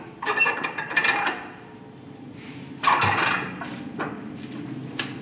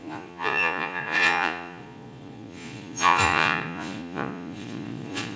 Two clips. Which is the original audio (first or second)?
first